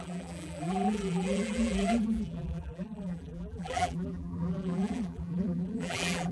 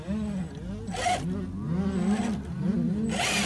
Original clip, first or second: second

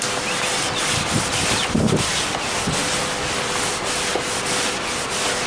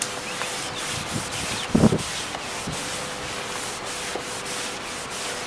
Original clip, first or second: second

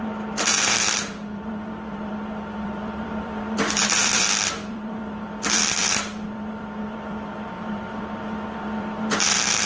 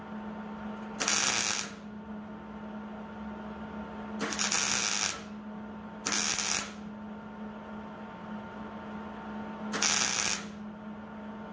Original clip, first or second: second